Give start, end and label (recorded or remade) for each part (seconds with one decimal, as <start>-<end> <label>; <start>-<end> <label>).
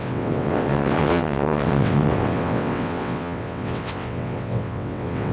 0.0-5.3 remade